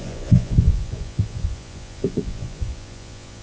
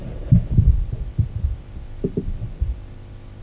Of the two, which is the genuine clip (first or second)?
second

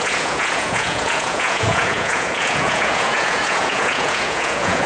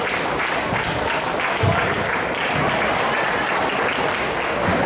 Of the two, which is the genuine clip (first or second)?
second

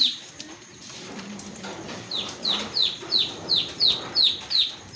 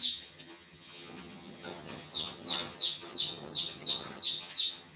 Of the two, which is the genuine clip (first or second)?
first